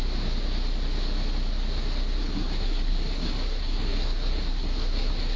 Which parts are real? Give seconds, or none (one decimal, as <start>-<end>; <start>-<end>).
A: 0.0-2.2